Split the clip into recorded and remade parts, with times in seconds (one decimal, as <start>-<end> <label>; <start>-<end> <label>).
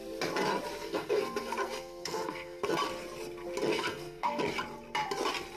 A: 0.0-0.9 recorded; 0.9-2.7 remade; 2.7-3.7 recorded; 3.7-4.4 remade; 4.4-5.6 recorded